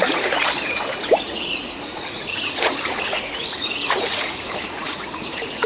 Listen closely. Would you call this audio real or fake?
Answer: fake